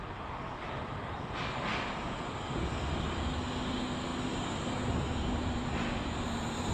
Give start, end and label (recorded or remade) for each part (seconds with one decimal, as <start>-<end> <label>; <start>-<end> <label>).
0.0-6.7 recorded

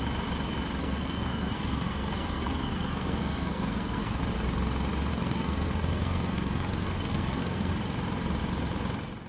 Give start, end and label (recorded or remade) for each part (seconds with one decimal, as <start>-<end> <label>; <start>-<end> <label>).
0.0-0.8 recorded; 0.8-4.2 remade; 4.2-5.1 recorded; 5.1-7.7 remade; 7.7-9.3 recorded

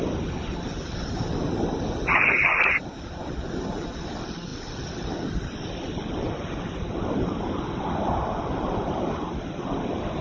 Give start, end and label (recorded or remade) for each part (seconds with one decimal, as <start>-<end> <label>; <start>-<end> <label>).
0.0-10.2 recorded

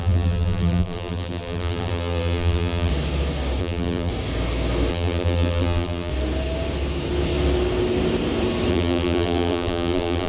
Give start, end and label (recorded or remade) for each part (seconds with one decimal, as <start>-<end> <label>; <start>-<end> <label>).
0.0-2.9 remade; 2.9-3.6 recorded; 3.6-4.1 remade; 4.1-4.9 recorded; 4.9-6.1 remade; 6.1-8.7 recorded; 8.7-10.3 remade